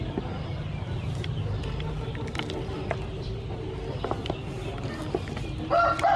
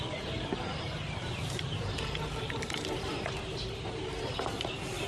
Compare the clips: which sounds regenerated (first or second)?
second